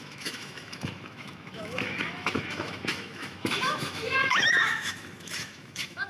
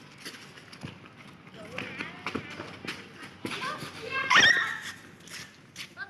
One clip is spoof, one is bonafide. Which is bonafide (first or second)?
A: second